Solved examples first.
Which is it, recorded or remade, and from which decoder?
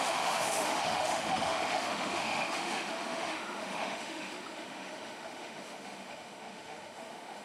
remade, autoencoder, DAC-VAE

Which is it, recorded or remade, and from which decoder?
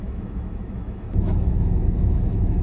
remade, autoencoder, DAC-VAE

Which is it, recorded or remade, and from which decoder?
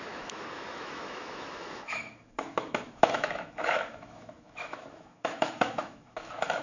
remade, autoencoder, DAC-VAE